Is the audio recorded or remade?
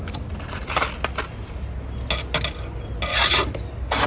recorded